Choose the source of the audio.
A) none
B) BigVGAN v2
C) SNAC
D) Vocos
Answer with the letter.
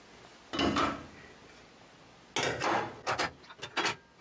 A